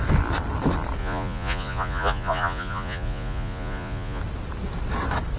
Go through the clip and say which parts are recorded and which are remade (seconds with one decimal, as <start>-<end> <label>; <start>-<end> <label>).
0.0-1.0 recorded; 1.0-4.2 remade; 4.2-5.4 recorded